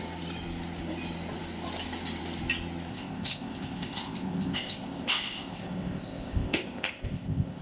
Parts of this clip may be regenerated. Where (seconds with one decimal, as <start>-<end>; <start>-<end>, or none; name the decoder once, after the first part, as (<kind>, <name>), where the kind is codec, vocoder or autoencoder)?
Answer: 2.9-7.6 (codec, ZipCodec)